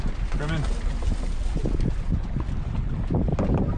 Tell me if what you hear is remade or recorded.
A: recorded